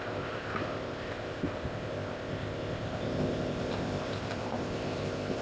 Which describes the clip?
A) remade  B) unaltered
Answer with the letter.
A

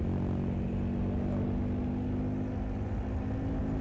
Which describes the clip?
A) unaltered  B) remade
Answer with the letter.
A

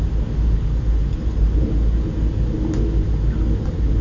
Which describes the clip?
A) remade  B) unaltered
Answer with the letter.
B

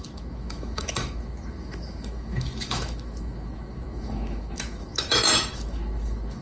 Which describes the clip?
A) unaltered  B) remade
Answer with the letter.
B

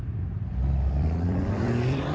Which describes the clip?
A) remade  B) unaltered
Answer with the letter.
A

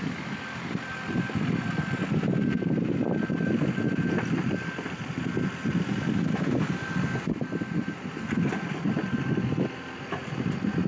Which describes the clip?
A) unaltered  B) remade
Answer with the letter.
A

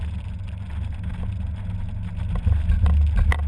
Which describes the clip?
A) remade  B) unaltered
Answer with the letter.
B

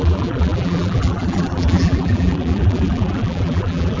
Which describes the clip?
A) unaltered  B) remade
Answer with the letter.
B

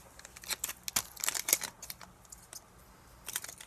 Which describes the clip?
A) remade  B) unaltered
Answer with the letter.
B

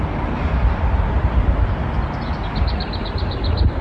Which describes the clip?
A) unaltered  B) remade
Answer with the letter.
A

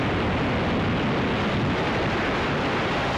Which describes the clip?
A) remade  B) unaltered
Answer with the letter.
B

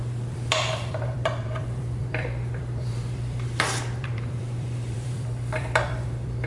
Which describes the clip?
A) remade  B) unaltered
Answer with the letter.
A